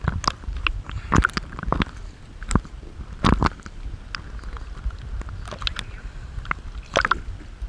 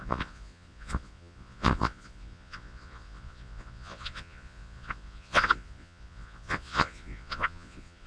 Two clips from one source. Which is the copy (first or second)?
second